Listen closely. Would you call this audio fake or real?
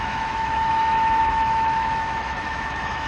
fake